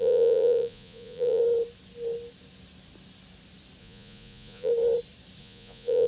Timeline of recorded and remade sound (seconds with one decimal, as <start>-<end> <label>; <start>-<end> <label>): 0.0-1.4 remade; 1.4-3.8 recorded; 3.8-4.7 remade; 4.7-5.4 recorded; 5.4-6.1 remade